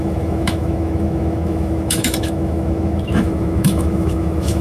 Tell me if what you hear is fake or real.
fake